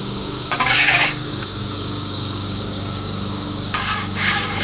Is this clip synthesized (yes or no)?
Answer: yes